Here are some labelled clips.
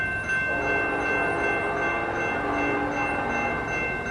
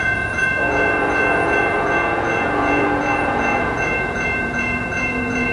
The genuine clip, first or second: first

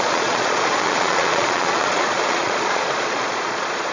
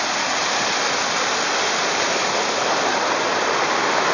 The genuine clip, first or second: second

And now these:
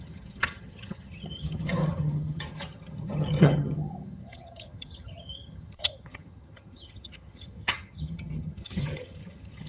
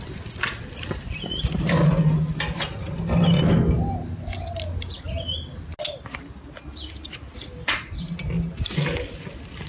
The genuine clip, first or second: second